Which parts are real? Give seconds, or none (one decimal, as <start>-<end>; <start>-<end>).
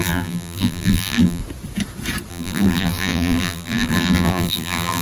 1.4-2.3